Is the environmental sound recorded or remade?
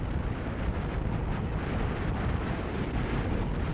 recorded